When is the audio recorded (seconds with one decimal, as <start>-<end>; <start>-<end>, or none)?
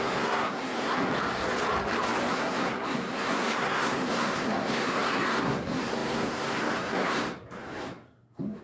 1.1-2.3